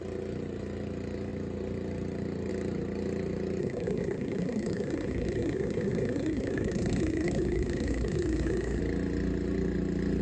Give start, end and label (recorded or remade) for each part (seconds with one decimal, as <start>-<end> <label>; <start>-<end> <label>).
0.0-3.6 recorded; 3.6-8.8 remade; 8.8-10.2 recorded